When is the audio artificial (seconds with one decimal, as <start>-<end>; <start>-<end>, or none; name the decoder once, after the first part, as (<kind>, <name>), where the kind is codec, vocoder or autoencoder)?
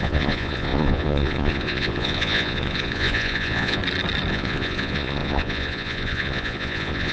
0.0-3.8 (vocoder, Vocos); 4.3-7.1